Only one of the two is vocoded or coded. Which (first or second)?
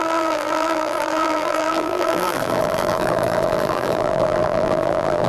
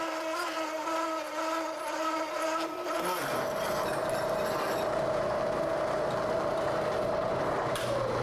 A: first